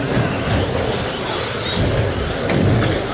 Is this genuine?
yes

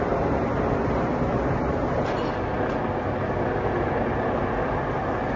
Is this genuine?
yes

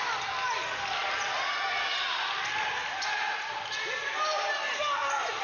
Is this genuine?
yes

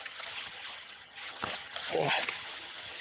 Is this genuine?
no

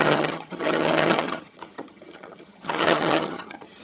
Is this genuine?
no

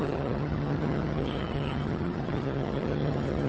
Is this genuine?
no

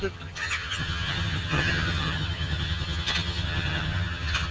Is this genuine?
no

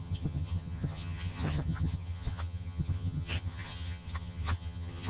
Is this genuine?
no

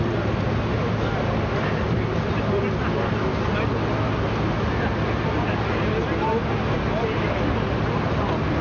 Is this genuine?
yes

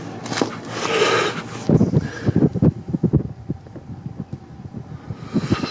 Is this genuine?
yes